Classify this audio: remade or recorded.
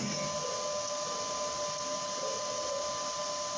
recorded